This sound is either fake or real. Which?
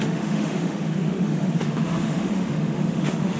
fake